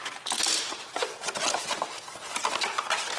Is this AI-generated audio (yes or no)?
no